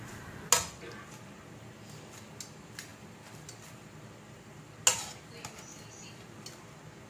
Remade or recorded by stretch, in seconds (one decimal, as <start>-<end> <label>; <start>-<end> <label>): 0.0-7.1 recorded